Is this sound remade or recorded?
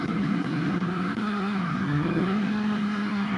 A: remade